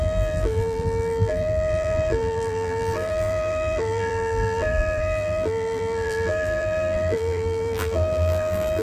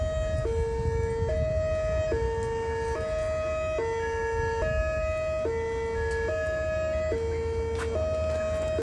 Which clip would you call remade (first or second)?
first